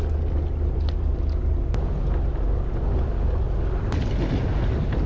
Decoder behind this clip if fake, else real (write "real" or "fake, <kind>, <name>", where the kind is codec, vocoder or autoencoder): real